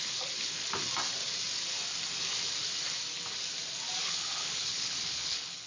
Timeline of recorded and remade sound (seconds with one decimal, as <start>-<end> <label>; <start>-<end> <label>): 0.0-0.6 remade; 0.6-4.0 recorded; 4.0-5.7 remade